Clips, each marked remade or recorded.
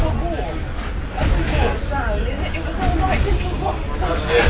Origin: recorded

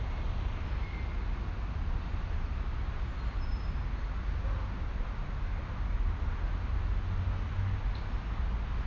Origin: recorded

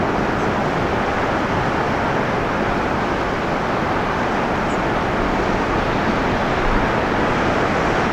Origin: recorded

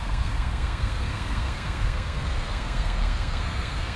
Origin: remade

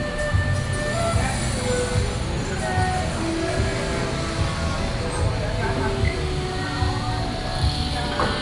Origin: recorded